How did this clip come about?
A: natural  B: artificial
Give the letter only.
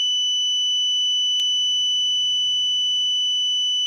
A